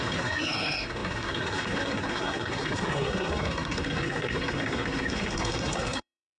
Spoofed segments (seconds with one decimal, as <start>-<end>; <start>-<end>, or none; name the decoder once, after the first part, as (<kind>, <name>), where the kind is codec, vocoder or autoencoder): 0.0-6.4 (codec, SNAC)